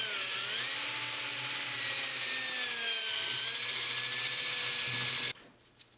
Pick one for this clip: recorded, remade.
recorded